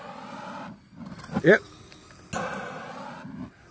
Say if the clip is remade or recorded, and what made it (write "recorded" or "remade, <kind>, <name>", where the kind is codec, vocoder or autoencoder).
recorded